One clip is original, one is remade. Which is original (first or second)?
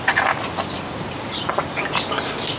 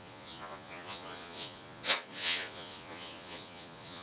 first